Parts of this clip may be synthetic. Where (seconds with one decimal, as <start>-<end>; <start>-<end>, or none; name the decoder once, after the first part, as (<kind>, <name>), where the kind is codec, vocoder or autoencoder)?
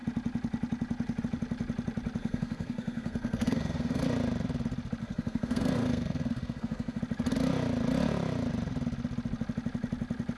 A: 2.2-4.0 (codec, SNAC); 5.0-7.0